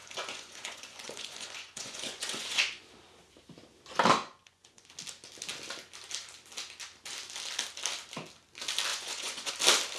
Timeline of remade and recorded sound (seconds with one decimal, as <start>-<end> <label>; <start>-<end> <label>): 0.0-2.9 remade; 2.9-4.2 recorded; 4.2-4.9 remade; 4.9-8.9 recorded; 8.9-9.5 remade; 9.5-10.0 recorded